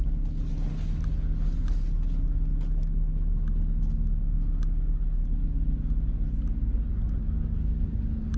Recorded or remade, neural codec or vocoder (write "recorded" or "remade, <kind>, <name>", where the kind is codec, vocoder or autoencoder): recorded